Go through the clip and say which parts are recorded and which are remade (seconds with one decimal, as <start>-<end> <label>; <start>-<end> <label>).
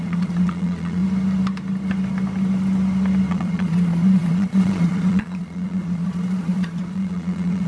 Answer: 0.0-1.0 remade; 1.0-3.3 recorded; 3.3-7.7 remade